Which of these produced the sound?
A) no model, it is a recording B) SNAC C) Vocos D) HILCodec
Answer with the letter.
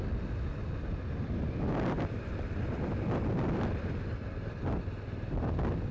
A